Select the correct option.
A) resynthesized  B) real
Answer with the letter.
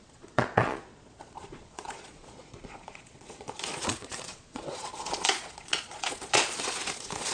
A